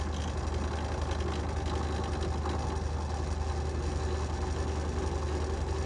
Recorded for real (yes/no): yes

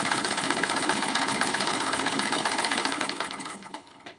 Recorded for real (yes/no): no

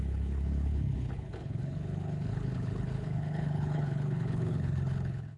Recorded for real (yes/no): no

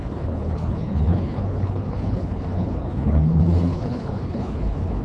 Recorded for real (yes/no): no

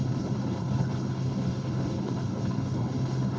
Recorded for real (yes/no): no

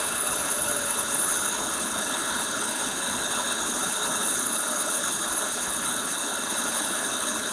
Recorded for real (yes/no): no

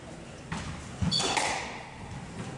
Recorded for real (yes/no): yes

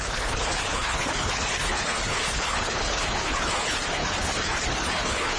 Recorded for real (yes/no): no